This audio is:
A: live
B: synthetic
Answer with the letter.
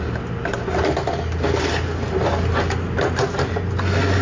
A